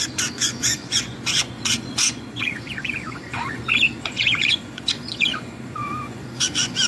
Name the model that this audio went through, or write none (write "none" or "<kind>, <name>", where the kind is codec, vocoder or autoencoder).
vocoder, Vocos